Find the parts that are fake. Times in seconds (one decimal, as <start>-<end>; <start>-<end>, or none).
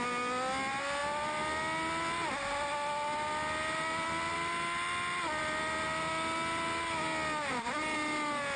none